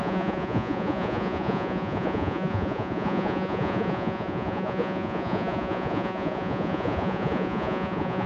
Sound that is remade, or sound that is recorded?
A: remade